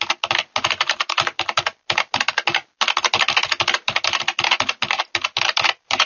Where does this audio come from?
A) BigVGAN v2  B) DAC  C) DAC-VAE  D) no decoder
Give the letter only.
D